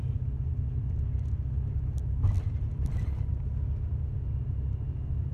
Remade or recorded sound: recorded